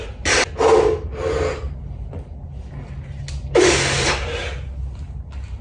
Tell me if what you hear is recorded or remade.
recorded